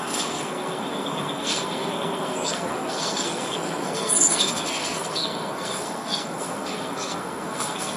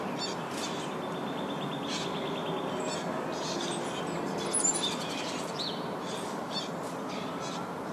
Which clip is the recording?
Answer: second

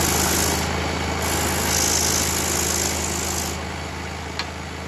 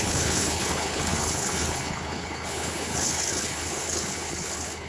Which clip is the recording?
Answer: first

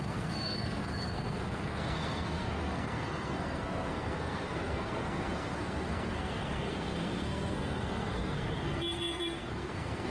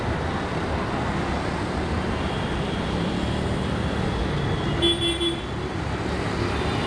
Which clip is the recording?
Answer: second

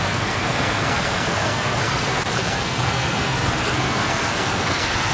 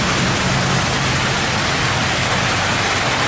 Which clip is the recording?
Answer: second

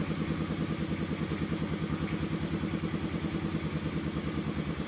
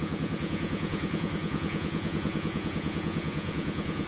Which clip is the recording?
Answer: first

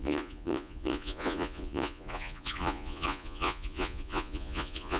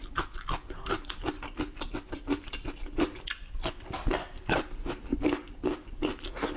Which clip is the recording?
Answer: second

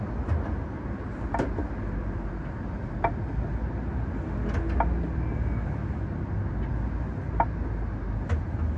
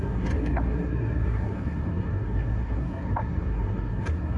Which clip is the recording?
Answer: first